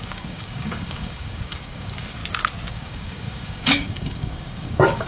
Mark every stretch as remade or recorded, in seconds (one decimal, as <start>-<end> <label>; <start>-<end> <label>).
0.0-2.2 remade; 2.2-2.7 recorded; 2.7-5.1 remade